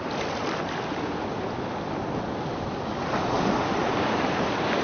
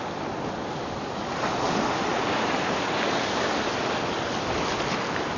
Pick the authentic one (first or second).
second